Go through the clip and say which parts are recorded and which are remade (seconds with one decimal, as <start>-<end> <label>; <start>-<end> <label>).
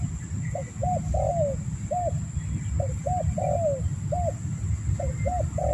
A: 0.0-5.7 recorded